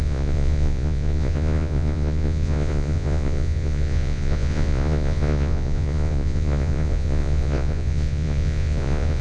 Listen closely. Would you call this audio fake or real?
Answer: fake